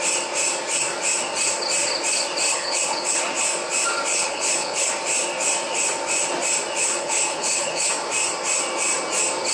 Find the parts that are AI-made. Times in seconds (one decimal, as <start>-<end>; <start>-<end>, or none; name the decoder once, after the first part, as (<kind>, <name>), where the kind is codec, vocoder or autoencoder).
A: 2.5-3.2 (codec, HILCodec); 4.1-4.9; 6.8-7.9